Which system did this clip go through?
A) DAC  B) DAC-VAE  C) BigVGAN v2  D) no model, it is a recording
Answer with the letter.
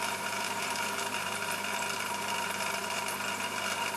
C